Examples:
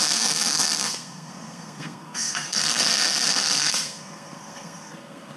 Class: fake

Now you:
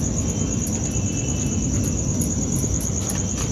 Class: real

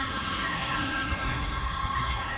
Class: fake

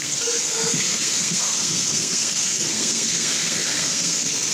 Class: fake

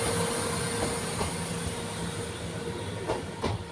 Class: real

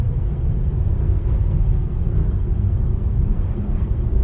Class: fake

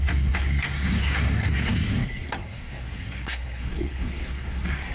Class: fake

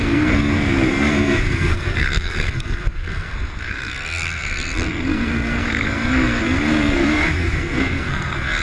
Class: fake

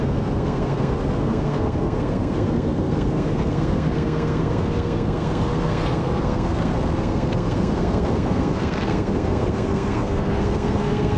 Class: fake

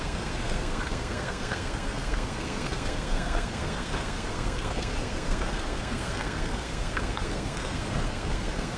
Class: fake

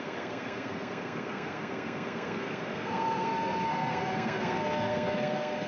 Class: fake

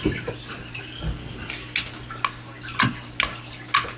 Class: real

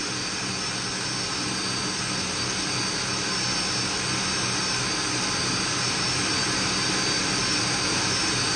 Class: real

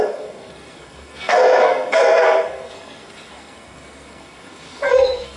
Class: fake